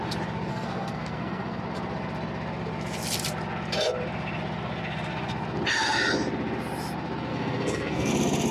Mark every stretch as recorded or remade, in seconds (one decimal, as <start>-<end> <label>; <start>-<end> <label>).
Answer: 0.0-0.5 recorded; 0.5-1.6 remade; 1.6-7.3 recorded; 7.3-8.1 remade; 8.1-8.5 recorded